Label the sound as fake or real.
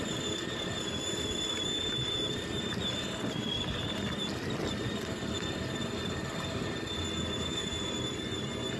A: real